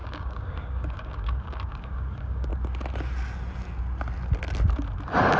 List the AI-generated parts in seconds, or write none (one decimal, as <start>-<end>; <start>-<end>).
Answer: 0.0-2.5